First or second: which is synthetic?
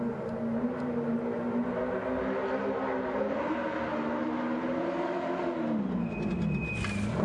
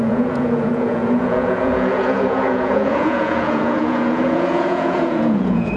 second